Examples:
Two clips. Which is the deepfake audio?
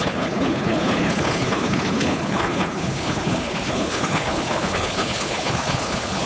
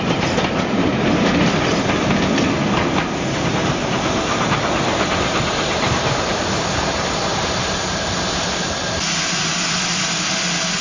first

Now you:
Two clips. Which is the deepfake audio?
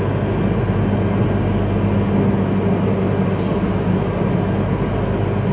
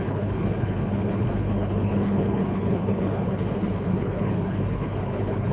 second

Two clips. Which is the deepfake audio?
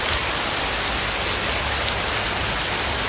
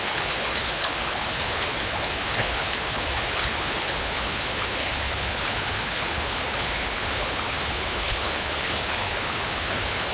second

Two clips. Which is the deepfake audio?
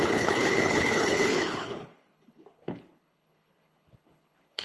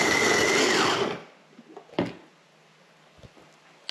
first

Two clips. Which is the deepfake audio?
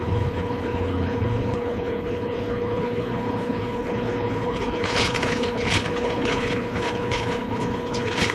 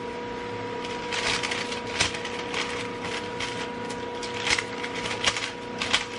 first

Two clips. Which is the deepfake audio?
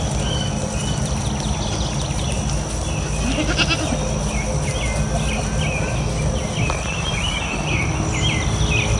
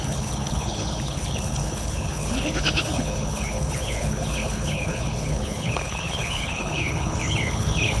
second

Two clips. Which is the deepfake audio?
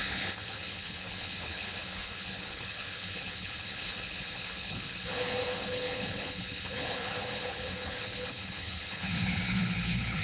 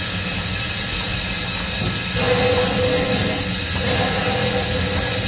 first